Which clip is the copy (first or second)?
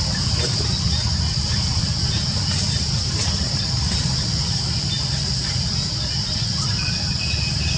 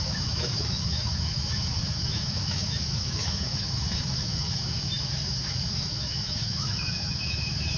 second